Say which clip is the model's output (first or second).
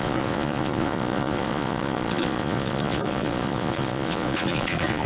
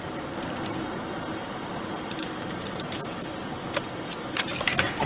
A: first